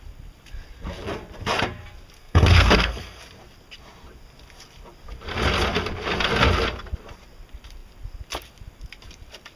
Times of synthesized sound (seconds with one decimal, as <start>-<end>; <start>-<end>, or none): 2.2-3.2